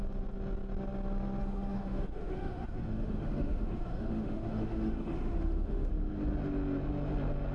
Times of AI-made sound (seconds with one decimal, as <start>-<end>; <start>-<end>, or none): 1.4-5.9

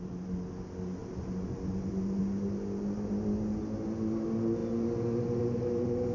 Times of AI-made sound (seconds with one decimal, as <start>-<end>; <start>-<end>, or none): none

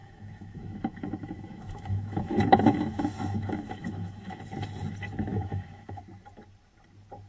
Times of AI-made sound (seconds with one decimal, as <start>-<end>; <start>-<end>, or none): 0.0-4.4; 5.3-6.0